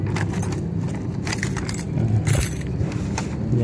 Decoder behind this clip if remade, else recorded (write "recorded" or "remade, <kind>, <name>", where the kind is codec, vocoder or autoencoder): recorded